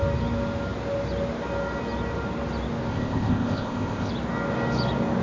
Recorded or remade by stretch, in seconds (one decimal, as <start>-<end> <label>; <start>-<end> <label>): 0.0-2.9 recorded; 2.9-4.1 remade; 4.1-5.2 recorded